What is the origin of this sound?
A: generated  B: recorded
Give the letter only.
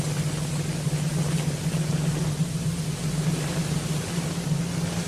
B